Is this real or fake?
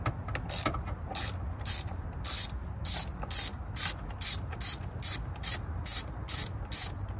real